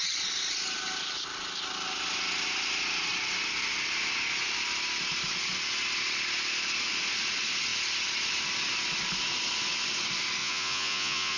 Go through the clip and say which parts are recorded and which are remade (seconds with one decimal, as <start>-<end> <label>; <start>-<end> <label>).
0.0-10.4 recorded; 10.4-11.4 remade